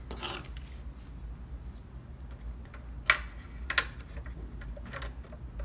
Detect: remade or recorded recorded